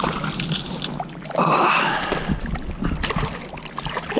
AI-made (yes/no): no